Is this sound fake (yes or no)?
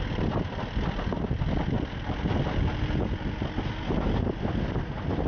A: no